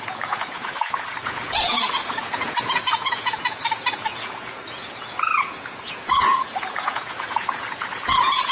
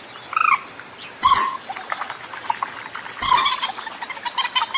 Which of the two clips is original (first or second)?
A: second